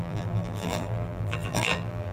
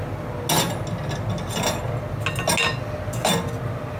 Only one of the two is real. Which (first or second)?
second